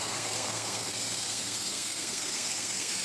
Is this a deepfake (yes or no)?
yes